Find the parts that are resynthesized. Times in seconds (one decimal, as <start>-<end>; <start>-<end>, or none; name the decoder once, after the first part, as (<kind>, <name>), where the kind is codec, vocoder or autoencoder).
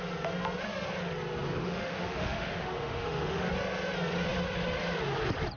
1.6-3.5 (autoencoder, DAC-VAE)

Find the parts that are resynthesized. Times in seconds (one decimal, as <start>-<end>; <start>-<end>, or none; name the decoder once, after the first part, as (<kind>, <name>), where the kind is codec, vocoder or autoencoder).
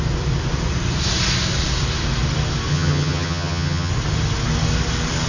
2.7-3.9 (vocoder, HiFi-GAN)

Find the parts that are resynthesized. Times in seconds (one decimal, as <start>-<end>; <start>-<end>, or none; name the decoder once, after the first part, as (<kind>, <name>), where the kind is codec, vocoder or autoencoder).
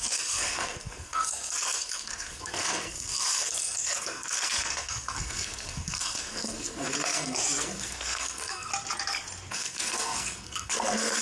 0.0-8.7 (codec, SNAC); 9.5-11.2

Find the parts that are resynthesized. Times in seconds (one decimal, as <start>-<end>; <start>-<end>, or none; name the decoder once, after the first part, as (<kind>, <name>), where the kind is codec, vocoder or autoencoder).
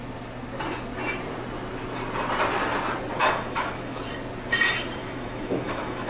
3.2-4.0 (autoencoder, DAC-VAE); 5.0-6.1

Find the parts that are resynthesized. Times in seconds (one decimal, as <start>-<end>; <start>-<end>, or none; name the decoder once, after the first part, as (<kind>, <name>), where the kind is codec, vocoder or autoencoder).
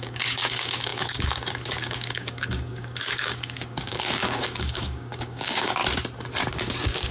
0.0-5.8 (codec, DAC); 6.5-7.1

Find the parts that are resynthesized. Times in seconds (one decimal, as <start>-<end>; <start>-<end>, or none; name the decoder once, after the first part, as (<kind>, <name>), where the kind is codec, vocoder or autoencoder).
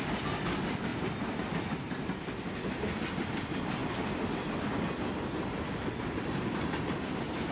none